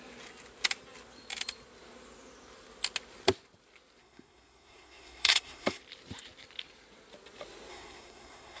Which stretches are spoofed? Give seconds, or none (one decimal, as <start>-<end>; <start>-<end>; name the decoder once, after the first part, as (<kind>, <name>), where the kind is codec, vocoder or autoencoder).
4.0-5.8 (codec, SNAC); 7.7-8.6